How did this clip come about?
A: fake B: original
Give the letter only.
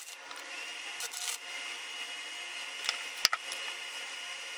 B